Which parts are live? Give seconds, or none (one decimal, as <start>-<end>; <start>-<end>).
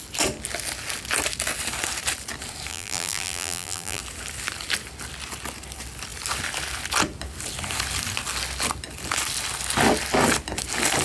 0.0-2.7; 4.0-11.0